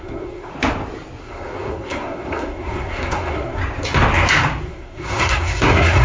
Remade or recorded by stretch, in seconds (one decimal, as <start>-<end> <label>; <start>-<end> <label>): 0.0-0.5 remade; 0.5-1.2 recorded; 1.2-3.6 remade; 3.6-4.6 recorded; 4.6-6.0 remade